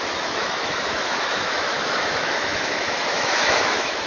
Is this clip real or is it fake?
fake